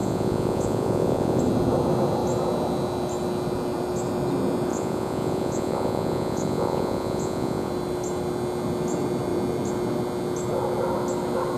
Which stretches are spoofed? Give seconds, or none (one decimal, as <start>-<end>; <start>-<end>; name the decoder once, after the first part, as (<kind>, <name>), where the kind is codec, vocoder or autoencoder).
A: 0.0-1.4 (vocoder, Vocos); 4.7-7.7